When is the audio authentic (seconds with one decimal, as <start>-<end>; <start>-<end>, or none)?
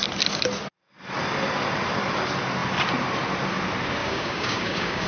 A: 0.0-4.0